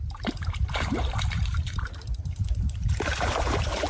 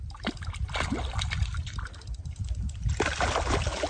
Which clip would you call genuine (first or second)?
second